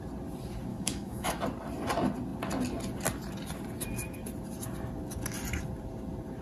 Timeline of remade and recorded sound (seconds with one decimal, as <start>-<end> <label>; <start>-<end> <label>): 0.0-0.7 recorded; 0.7-1.4 remade; 1.4-6.4 recorded